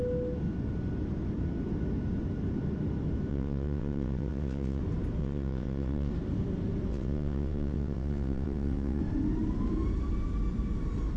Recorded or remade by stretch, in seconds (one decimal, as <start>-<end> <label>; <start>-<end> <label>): 0.0-3.3 recorded; 3.3-4.8 remade; 4.8-5.2 recorded; 5.2-6.1 remade; 6.1-6.9 recorded; 6.9-9.0 remade; 9.0-11.2 recorded